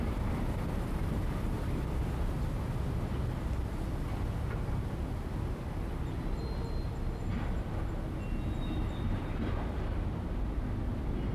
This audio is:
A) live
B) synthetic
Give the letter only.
A